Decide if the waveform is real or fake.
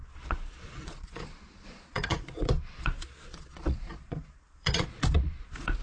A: fake